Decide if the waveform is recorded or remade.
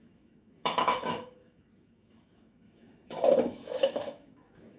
remade